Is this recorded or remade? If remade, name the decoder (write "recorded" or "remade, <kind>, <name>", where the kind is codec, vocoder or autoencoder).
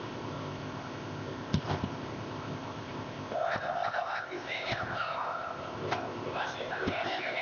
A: remade, codec, ZipCodec